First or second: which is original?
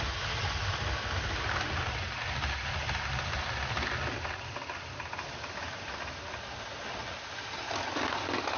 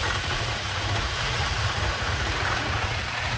first